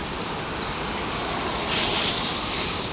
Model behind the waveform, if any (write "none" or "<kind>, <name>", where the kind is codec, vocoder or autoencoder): vocoder, BigVGAN v2